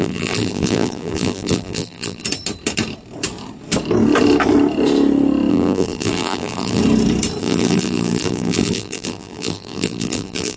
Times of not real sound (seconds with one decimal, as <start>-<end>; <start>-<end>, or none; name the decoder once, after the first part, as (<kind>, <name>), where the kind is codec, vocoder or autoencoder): 0.0-2.2 (vocoder, BigVGAN v2); 5.5-6.8; 7.4-10.6